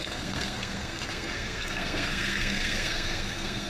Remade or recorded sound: remade